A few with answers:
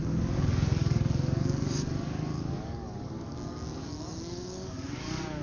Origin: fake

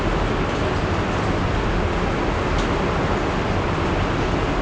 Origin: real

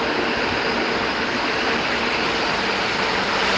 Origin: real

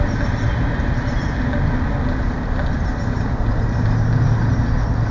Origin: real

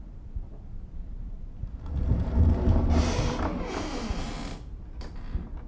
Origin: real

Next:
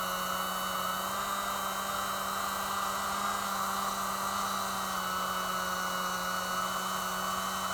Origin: real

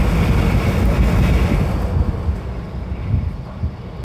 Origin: real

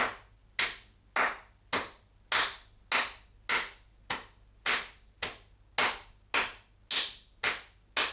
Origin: real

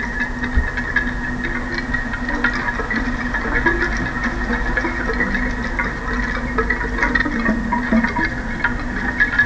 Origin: real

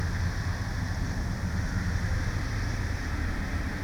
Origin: real